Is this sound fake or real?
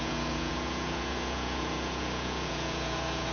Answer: fake